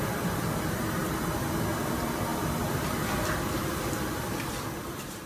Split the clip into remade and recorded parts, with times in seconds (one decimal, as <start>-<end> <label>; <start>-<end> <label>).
0.0-1.0 remade; 1.0-1.8 recorded; 1.8-2.3 remade; 2.3-4.8 recorded; 4.8-5.3 remade